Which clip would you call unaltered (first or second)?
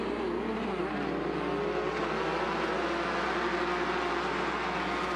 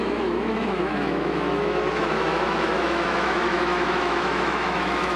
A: first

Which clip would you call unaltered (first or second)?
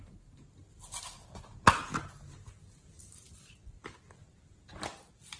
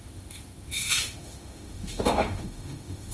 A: first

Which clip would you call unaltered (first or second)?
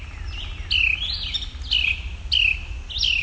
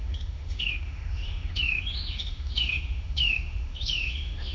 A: first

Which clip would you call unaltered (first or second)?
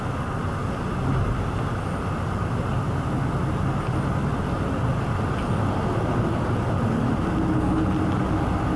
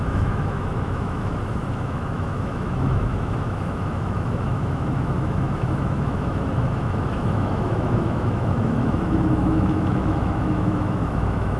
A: first